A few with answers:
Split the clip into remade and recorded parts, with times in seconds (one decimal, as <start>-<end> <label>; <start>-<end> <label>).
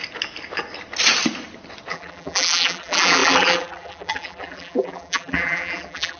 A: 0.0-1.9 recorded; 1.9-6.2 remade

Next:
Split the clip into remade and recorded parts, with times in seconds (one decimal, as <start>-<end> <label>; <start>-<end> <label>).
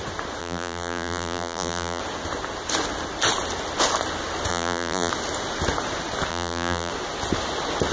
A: 0.0-0.4 recorded; 0.4-2.0 remade; 2.0-4.5 recorded; 4.5-5.1 remade; 5.1-6.3 recorded; 6.3-6.9 remade; 6.9-7.9 recorded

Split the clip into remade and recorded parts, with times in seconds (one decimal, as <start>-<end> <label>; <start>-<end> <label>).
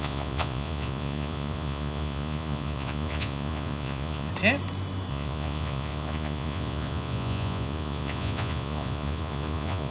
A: 0.0-4.3 remade; 4.3-5.1 recorded; 5.1-9.9 remade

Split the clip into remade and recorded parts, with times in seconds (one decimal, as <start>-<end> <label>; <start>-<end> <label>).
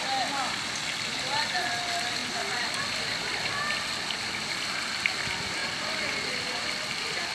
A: 0.0-7.3 recorded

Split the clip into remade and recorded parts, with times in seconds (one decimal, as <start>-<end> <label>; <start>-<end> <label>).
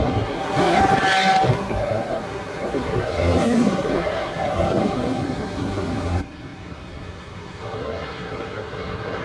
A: 0.0-0.8 remade; 0.8-1.5 recorded; 1.5-9.2 remade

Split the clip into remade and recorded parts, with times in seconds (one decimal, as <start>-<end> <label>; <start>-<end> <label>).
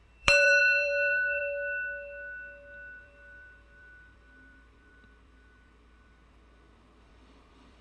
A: 0.0-1.4 remade; 1.4-3.0 recorded; 3.0-7.8 remade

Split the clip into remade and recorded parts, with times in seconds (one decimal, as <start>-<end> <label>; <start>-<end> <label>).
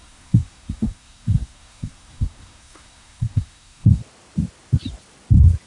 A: 0.0-4.0 remade; 4.0-5.7 recorded